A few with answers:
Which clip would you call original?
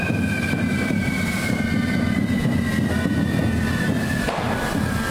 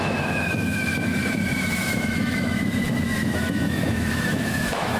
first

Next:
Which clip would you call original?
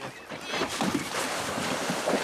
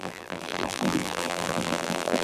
first